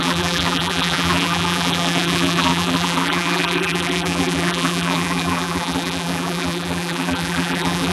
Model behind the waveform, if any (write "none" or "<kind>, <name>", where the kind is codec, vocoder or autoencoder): vocoder, BigVGAN v2